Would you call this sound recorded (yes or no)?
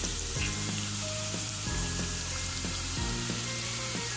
no